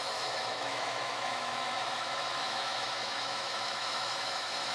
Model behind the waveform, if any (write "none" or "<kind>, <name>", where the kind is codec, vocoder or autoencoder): autoencoder, DAC-VAE